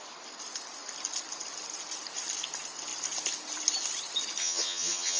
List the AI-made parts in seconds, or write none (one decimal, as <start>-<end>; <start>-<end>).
4.4-5.2